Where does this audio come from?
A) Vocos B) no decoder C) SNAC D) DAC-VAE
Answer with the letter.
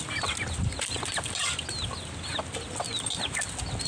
B